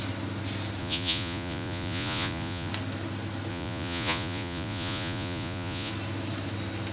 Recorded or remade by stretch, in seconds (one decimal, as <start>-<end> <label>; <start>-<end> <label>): 0.0-0.8 recorded; 0.8-2.7 remade; 2.7-3.5 recorded; 3.5-5.9 remade; 5.9-6.9 recorded